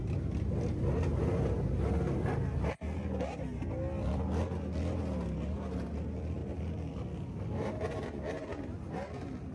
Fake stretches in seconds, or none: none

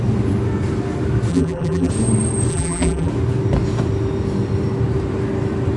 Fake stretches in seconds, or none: 1.3-1.9 (vocoder, BigVGAN v2); 2.5-3.1

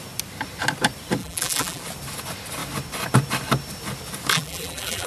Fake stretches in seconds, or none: 1.2-1.8 (vocoder, BigVGAN v2); 4.3-5.1

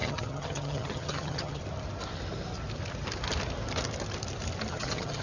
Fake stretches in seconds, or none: 0.0-1.6 (vocoder, HiFi-GAN); 4.7-5.2

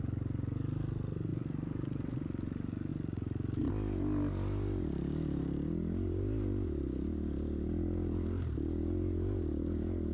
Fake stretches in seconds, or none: 1.3-2.0 (vocoder, BigVGAN v2)

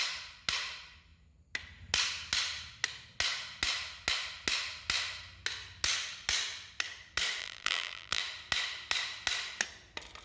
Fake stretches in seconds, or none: 7.4-8.2 (vocoder, BigVGAN v2)

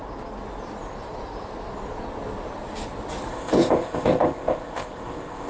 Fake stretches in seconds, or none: 3.3-5.5 (codec, ZipCodec)

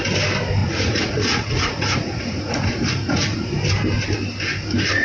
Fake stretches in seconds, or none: 0.6-3.6 (vocoder, Vocos)